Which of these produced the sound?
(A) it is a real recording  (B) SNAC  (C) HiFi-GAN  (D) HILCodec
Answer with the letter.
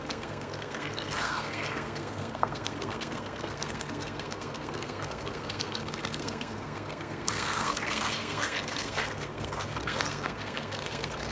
B